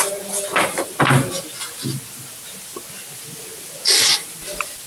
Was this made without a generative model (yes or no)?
yes